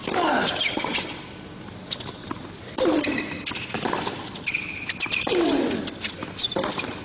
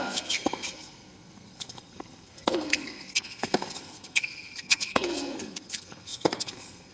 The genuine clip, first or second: first